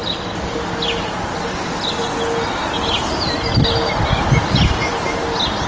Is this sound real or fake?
real